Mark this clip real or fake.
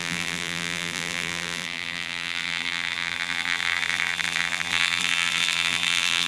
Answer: fake